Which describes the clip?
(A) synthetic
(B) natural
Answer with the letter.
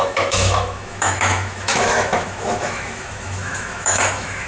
A